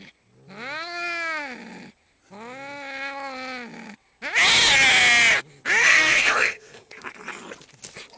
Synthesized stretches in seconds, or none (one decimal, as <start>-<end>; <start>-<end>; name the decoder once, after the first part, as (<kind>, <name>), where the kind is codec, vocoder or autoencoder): 5.8-6.9 (codec, SNAC)